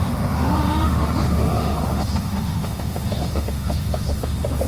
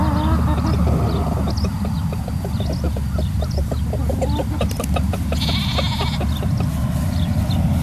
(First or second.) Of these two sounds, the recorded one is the second